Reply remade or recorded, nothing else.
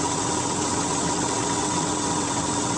remade